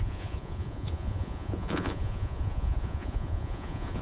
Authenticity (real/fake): fake